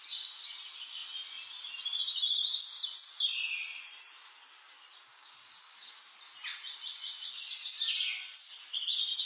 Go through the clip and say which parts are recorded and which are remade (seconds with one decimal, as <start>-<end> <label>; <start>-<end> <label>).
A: 0.0-5.1 recorded; 5.1-6.0 remade; 6.0-9.3 recorded